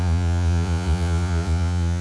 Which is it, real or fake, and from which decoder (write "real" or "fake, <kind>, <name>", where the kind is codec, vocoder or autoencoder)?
fake, vocoder, Vocos